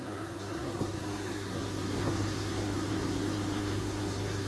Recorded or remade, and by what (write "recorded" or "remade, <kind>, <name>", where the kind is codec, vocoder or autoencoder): remade, codec, SNAC